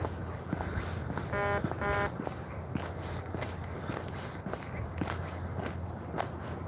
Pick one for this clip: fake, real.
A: real